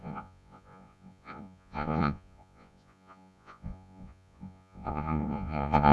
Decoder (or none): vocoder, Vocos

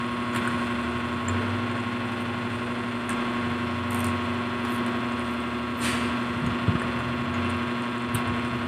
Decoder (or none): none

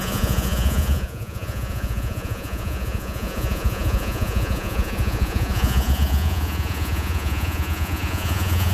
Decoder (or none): vocoder, Vocos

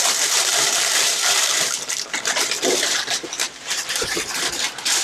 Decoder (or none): vocoder, BigVGAN v2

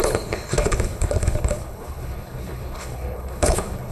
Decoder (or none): codec, HILCodec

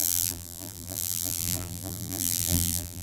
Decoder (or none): vocoder, BigVGAN v2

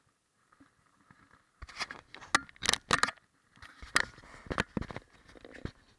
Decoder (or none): none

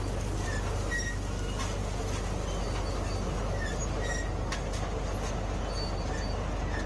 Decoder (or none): none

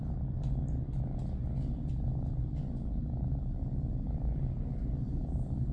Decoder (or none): none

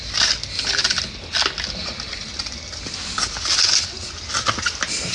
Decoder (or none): none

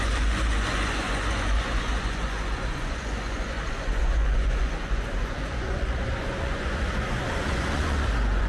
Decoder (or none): vocoder, Vocos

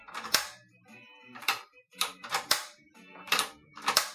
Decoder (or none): vocoder, BigVGAN v2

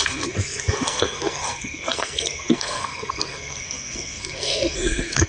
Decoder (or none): codec, SNAC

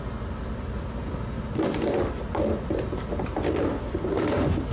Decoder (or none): none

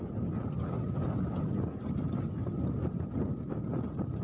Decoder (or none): none